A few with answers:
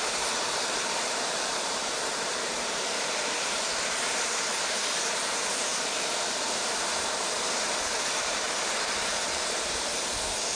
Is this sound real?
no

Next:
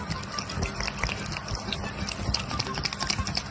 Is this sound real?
yes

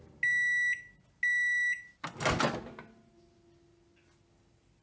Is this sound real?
yes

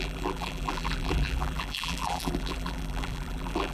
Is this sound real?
no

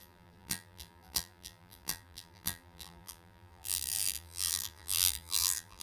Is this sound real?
no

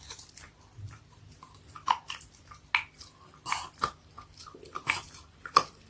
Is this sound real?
yes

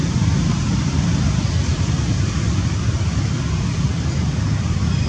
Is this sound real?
no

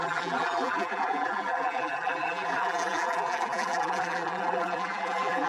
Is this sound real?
no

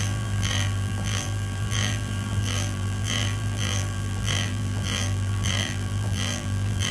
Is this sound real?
no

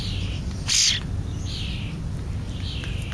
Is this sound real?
yes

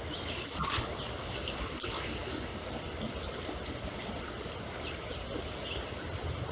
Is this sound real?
yes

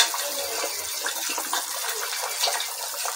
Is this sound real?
yes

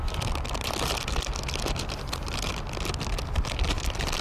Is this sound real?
yes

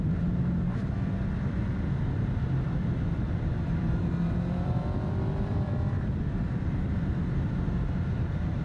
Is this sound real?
no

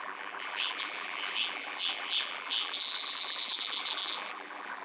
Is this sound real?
no